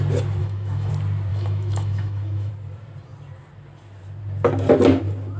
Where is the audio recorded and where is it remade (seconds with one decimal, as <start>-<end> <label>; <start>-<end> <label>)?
0.0-0.4 recorded; 0.4-0.9 remade; 0.9-1.3 recorded; 1.3-2.5 remade; 2.5-5.4 recorded